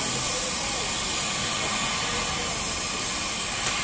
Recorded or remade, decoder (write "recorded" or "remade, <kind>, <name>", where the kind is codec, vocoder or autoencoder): recorded